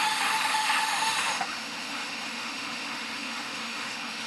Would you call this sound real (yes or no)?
no